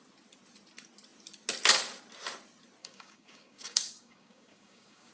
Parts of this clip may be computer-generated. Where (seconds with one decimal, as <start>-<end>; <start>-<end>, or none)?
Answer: 2.8-5.1